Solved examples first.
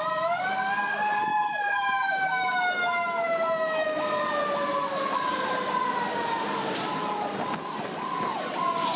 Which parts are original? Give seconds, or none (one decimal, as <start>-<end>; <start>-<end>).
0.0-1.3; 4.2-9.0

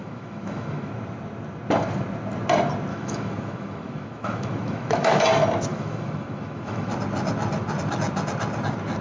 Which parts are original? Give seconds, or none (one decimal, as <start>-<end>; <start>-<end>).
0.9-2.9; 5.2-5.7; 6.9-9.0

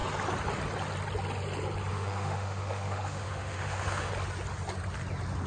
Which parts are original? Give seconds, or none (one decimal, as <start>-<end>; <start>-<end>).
0.0-1.9; 4.1-5.5

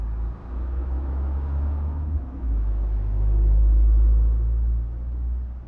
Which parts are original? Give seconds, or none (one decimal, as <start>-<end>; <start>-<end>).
0.0-0.4; 3.6-5.7

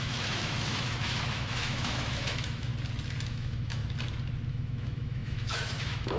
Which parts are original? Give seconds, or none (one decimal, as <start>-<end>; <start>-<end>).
2.7-3.3; 3.8-4.5

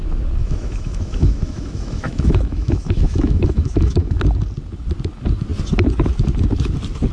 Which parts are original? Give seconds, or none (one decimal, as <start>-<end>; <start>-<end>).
0.0-0.4; 4.2-7.1

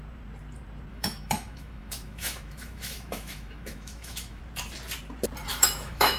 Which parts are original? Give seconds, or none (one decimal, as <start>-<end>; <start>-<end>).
0.0-0.9; 4.4-5.5